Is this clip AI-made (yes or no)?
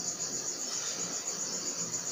no